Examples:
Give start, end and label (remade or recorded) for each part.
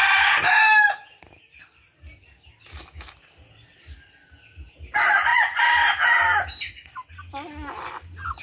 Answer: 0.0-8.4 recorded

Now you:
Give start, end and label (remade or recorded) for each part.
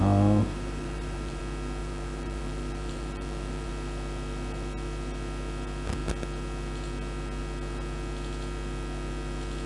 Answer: 0.0-0.4 recorded; 0.4-1.4 remade; 1.4-1.8 recorded; 1.8-3.7 remade; 3.7-9.7 recorded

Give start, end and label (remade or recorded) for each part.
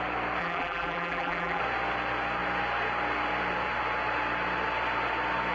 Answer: 0.0-0.4 recorded; 0.4-1.6 remade; 1.6-5.5 recorded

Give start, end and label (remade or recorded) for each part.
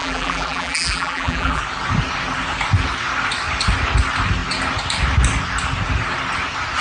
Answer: 0.0-1.6 remade; 1.6-6.8 recorded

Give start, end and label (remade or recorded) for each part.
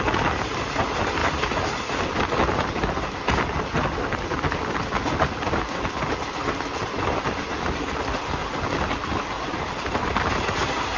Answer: 0.0-1.2 recorded; 1.2-2.8 remade; 2.8-8.4 recorded; 8.4-9.5 remade; 9.5-11.0 recorded